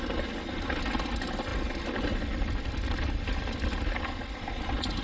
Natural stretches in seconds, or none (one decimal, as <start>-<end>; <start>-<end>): 0.0-5.0